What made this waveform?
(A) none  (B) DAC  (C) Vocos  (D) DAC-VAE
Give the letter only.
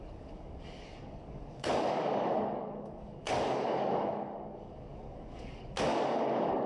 B